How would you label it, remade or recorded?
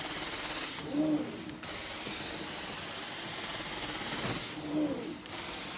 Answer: recorded